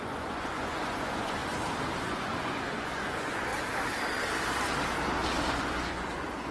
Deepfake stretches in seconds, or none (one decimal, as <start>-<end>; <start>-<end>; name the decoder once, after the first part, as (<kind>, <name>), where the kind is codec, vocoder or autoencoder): 0.0-1.4 (vocoder, Vocos); 2.0-3.5; 5.5-6.5